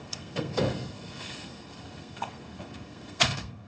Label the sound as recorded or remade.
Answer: remade